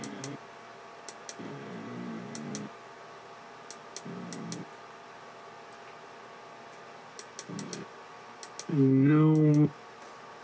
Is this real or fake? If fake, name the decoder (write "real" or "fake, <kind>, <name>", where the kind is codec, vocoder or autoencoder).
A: real